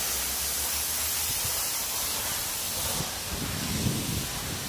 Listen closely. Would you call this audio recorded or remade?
recorded